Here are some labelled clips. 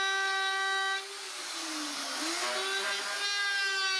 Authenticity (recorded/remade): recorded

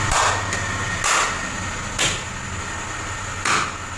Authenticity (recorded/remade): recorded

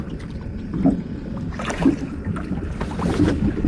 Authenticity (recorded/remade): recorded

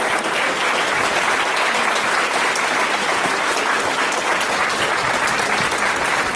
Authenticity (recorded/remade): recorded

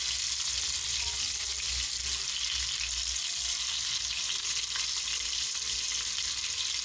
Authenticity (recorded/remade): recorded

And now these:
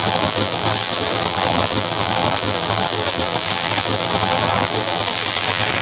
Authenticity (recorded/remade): remade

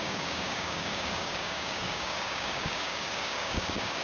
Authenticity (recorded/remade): remade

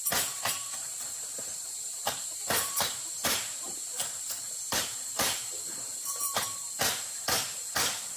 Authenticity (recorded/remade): remade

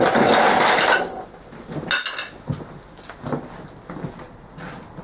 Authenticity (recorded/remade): recorded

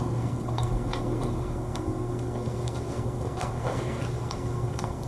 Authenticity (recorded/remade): remade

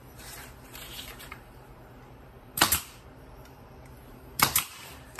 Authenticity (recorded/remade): remade